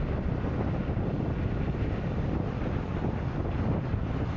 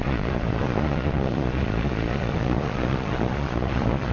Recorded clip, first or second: first